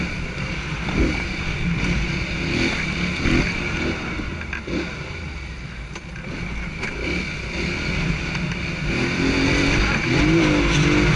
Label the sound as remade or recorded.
recorded